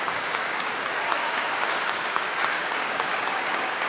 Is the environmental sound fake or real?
fake